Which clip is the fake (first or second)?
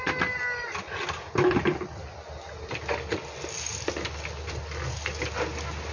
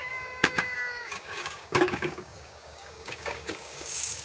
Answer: second